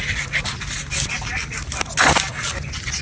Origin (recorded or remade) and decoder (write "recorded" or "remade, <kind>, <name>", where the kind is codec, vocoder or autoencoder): recorded